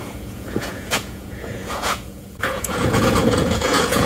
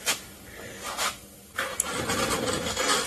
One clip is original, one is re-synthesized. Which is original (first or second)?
second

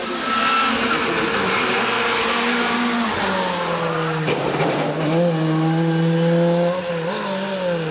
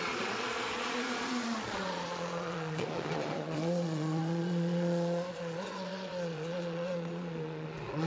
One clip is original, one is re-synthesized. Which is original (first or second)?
first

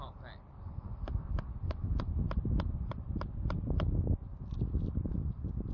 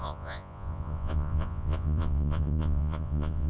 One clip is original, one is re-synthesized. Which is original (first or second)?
first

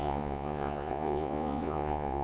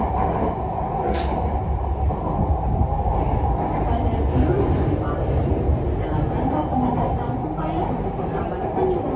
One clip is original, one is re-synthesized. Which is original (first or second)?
second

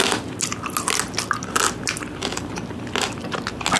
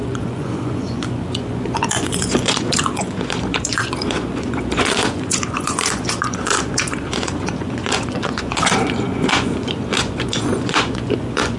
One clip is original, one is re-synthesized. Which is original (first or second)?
first